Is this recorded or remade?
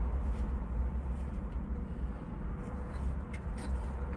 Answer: recorded